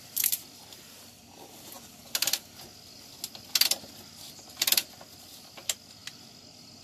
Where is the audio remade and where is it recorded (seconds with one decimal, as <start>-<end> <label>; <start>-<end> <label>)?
0.0-6.8 recorded